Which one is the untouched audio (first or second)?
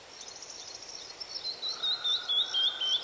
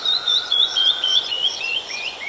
first